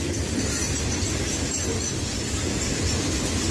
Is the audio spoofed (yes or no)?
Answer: no